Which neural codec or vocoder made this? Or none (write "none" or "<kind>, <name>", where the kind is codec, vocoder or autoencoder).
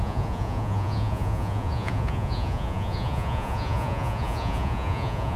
vocoder, Vocos